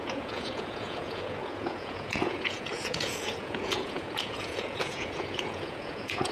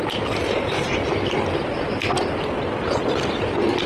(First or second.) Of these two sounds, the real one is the second